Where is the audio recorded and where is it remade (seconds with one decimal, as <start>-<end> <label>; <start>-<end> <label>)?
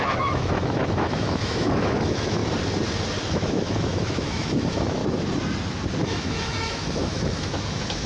0.0-2.4 remade; 2.4-3.3 recorded; 3.3-5.0 remade; 5.0-6.0 recorded; 6.0-8.1 remade